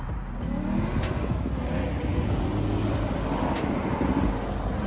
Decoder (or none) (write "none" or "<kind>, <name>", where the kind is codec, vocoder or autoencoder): none